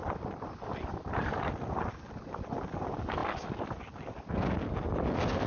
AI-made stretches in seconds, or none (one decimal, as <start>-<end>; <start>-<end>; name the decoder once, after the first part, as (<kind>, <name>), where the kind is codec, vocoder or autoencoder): none